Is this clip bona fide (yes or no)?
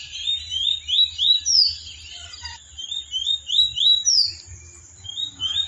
no